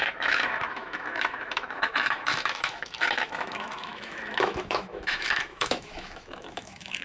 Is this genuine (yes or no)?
no